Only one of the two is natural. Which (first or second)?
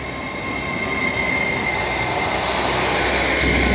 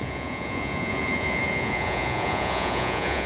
first